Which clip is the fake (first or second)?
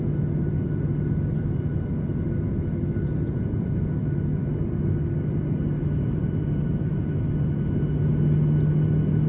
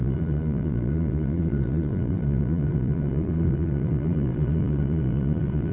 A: second